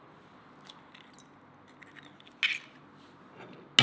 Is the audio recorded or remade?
recorded